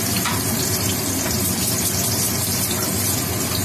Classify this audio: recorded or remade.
remade